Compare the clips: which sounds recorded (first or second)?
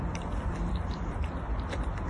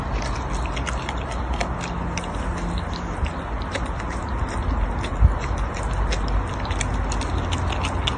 second